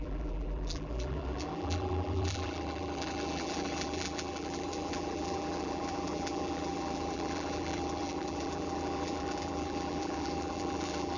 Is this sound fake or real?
fake